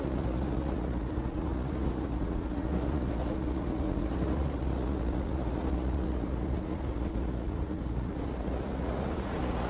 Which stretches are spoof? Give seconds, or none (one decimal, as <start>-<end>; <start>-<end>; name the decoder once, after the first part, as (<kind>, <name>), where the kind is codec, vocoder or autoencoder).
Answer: 0.0-9.7 (vocoder, Vocos)